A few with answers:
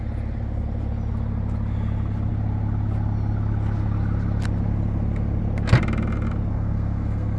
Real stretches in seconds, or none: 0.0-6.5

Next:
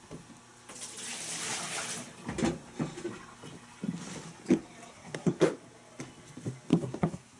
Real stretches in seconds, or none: 0.0-4.9; 5.5-6.7